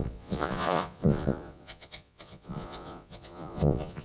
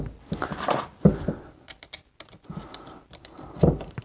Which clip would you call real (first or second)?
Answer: second